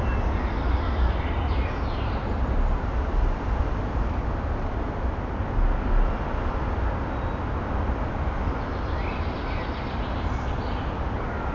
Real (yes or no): yes